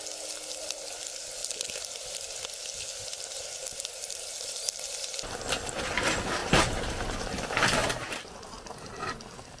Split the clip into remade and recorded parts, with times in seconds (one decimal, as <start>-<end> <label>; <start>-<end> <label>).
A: 0.0-6.4 recorded; 6.4-6.9 remade; 6.9-7.8 recorded; 7.8-8.9 remade; 8.9-9.6 recorded